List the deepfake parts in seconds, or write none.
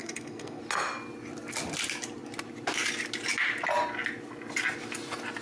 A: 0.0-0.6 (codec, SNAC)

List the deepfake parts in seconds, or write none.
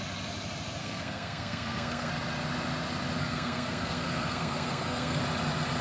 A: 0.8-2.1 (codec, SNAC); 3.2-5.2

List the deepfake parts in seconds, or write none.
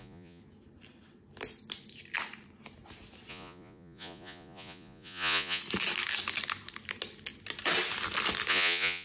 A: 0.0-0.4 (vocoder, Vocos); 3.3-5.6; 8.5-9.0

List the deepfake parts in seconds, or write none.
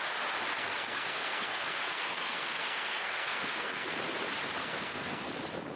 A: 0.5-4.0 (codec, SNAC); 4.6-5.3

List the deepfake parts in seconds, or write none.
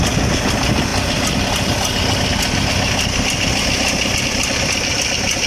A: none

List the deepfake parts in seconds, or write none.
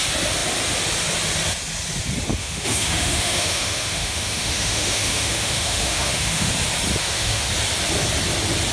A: 2.4-6.5 (autoencoder, DAC-VAE); 7.0-7.5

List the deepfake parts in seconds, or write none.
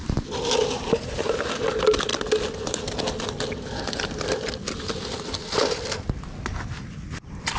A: none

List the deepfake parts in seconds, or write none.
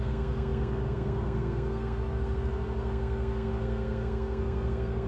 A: 0.0-5.1 (codec, SNAC)